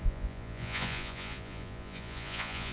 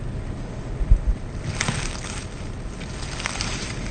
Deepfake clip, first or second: first